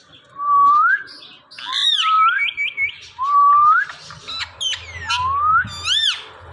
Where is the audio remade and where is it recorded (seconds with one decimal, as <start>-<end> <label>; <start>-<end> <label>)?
0.0-6.5 recorded

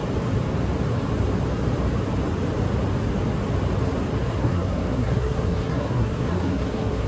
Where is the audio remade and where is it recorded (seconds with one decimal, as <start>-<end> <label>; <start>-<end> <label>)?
0.0-4.3 recorded; 4.3-7.1 remade